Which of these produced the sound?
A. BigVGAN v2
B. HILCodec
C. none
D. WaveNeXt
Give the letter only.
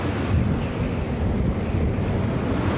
C